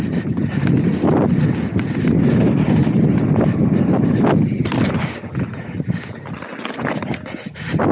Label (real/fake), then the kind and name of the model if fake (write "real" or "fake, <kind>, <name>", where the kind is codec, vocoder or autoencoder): real